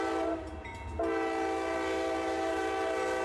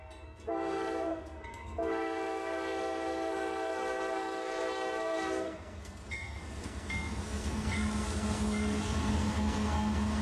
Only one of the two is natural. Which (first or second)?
first